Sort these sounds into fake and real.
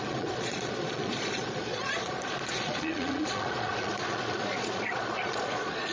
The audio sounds fake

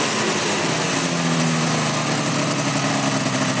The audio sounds real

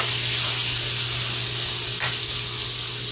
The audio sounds real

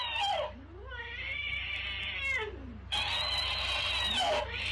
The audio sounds real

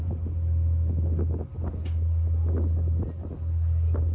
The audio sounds real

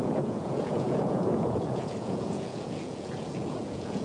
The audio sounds fake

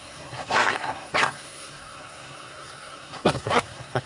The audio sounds fake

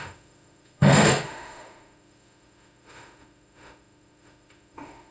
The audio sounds fake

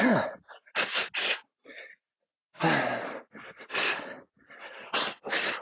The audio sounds real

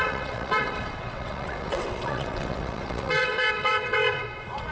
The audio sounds fake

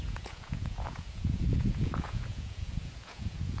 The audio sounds fake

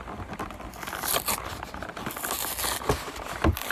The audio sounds real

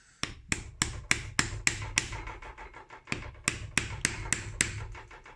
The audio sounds real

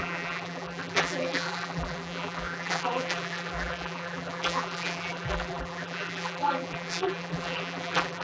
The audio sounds fake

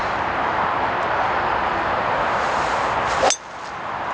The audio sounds real